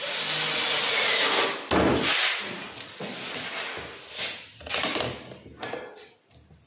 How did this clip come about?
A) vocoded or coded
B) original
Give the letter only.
B